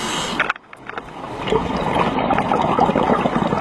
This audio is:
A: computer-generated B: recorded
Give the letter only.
B